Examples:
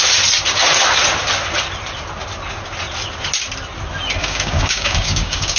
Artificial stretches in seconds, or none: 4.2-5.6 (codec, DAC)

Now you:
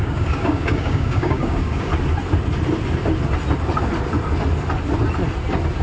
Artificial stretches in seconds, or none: 0.0-1.9 (codec, DAC)

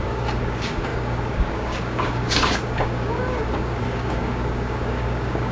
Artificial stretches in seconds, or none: 0.0-5.5 (codec, DAC)

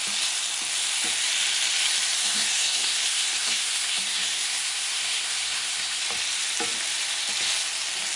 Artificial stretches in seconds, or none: 2.2-6.0 (codec, SNAC)

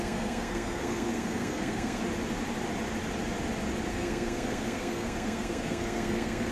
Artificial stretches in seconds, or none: 0.0-2.0 (codec, SNAC); 3.9-6.5

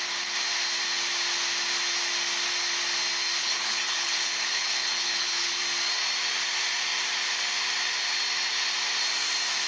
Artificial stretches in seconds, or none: 3.4-5.6 (codec, HILCodec)

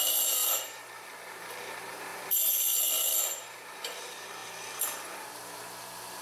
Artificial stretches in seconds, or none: 0.0-6.2 (vocoder, BigVGAN v2)

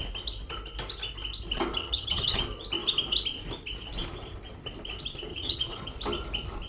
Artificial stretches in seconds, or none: 1.8-2.4 (vocoder, HiFi-GAN); 5.3-5.9